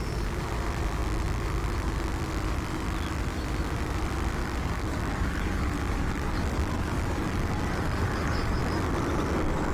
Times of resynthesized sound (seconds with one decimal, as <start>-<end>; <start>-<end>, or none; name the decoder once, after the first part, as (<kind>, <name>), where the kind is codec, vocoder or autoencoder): 4.4-8.6 (codec, DAC)